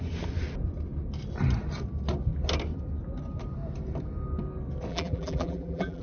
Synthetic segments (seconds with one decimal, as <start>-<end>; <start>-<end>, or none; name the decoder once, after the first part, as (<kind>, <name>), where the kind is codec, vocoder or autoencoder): 4.9-6.0 (vocoder, BigVGAN v2)